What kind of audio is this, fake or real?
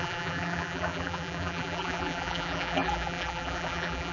fake